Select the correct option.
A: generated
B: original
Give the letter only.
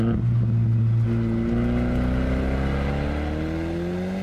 B